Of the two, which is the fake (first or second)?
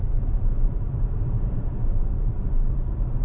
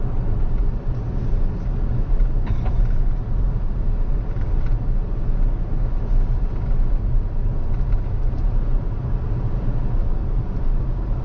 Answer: first